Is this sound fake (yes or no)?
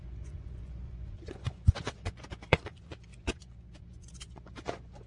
yes